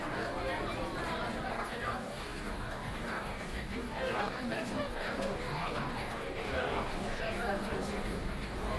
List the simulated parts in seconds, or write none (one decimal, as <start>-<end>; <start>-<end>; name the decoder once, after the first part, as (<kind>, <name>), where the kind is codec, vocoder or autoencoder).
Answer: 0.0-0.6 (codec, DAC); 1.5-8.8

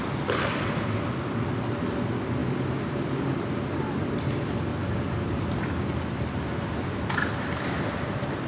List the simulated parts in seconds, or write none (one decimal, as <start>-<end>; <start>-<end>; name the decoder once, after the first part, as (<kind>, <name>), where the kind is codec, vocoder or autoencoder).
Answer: 2.4-4.1 (vocoder, BigVGAN v2); 4.7-6.2

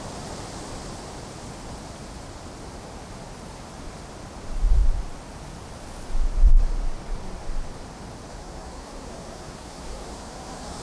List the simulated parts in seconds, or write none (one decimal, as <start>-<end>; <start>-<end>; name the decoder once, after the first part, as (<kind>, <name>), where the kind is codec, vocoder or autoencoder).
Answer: 8.3-10.8 (codec, SNAC)

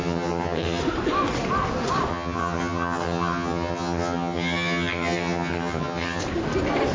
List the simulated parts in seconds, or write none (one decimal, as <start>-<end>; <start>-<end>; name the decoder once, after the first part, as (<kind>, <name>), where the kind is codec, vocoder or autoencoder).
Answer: 0.0-0.8 (vocoder, HiFi-GAN); 2.1-6.2

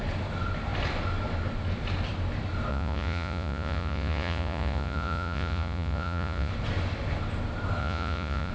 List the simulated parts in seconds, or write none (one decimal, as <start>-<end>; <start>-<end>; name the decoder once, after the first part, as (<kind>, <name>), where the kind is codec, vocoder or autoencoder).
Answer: 2.7-6.5 (vocoder, Vocos); 7.8-8.5